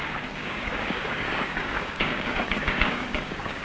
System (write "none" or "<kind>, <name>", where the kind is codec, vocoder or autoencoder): codec, DAC